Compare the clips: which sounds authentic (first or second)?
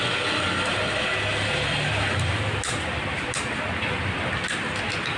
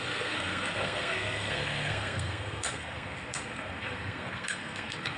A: first